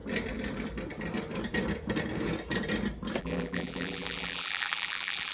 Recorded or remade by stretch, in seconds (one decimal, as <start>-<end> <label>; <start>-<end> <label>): 0.0-3.2 recorded; 3.2-5.3 remade

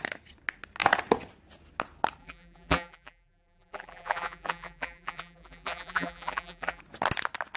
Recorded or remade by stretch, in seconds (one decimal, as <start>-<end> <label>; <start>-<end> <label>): 0.0-2.2 recorded; 2.2-6.8 remade; 6.8-7.6 recorded

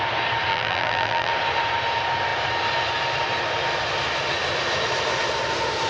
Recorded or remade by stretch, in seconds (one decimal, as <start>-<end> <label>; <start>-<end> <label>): 0.0-0.5 recorded; 0.5-1.3 remade; 1.3-5.9 recorded

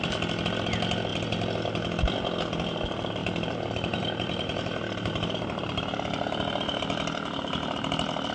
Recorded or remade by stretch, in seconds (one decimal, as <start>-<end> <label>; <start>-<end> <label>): 0.0-3.2 recorded; 3.2-5.8 remade; 5.8-8.3 recorded